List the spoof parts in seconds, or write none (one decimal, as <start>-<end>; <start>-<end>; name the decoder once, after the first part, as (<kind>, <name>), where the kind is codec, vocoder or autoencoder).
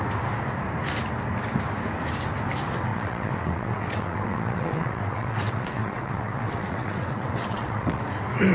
2.9-8.0 (vocoder, WaveNeXt)